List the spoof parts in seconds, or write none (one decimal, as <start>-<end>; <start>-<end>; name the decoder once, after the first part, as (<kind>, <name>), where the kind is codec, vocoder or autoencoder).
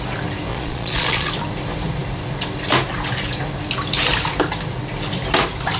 0.5-1.3 (vocoder, Vocos)